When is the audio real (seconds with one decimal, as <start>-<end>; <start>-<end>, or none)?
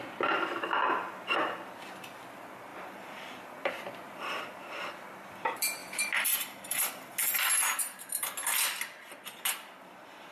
0.0-2.7; 4.4-5.8; 6.9-10.3